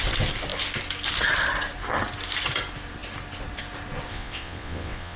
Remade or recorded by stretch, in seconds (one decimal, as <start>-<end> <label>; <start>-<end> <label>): 0.0-4.1 recorded; 4.1-5.2 remade